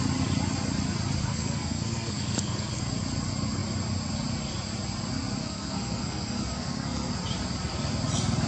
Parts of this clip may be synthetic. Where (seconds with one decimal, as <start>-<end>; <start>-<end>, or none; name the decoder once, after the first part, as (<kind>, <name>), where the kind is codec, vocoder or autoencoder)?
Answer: 1.2-2.7 (codec, SNAC); 5.4-7.1